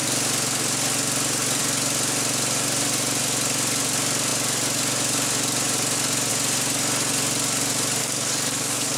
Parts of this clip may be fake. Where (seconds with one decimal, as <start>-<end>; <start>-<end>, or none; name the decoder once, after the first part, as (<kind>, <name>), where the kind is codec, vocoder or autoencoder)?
8.0-9.0 (codec, DAC)